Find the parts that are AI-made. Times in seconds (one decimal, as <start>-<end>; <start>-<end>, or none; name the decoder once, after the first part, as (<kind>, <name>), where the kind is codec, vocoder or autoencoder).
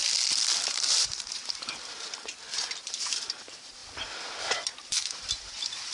0.7-1.4 (vocoder, BigVGAN v2); 2.8-3.8; 4.8-5.9